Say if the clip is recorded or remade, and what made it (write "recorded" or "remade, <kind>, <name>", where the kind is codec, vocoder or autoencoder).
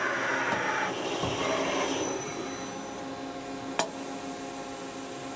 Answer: recorded